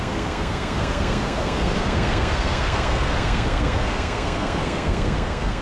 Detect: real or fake fake